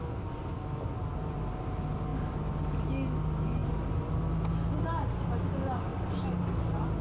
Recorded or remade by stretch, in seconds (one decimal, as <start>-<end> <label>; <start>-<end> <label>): 0.0-2.1 recorded; 2.1-2.9 remade; 2.9-3.6 recorded; 3.6-4.1 remade; 4.1-7.0 recorded

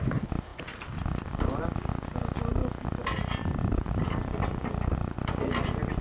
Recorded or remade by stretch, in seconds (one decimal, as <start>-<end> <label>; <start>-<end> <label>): 0.0-6.0 recorded